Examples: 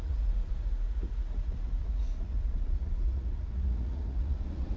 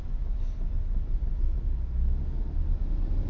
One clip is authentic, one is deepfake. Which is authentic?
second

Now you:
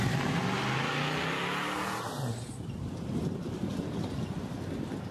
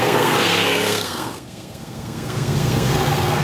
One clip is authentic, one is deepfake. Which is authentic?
first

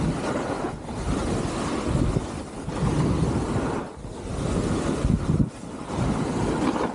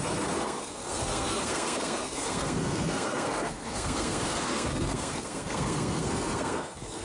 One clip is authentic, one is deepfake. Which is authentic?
first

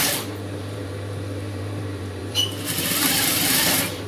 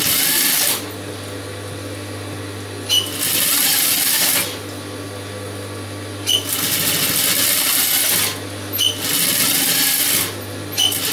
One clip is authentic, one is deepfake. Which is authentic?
second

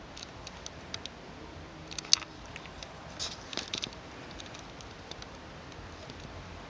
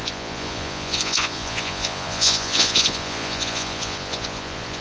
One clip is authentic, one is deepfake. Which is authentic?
first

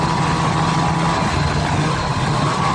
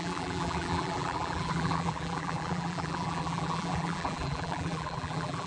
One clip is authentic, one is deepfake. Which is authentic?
first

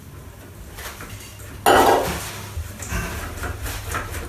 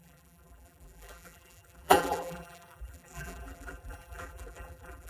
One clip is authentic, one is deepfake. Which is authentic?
first